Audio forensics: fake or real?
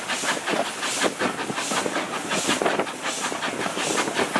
real